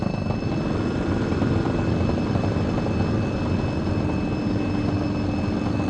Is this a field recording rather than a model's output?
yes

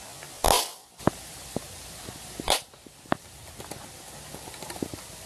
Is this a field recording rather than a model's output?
yes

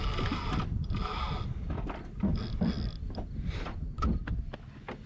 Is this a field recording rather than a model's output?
yes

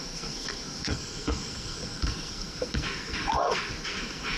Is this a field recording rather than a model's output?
no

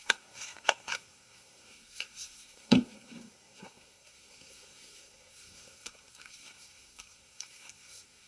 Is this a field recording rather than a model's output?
no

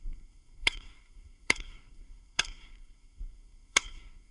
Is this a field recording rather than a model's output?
no